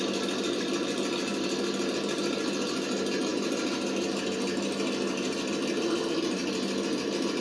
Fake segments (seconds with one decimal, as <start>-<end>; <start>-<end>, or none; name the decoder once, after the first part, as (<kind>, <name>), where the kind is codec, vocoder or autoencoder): none